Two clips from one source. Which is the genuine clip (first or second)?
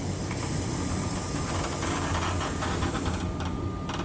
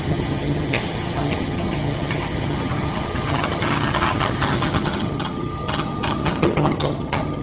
first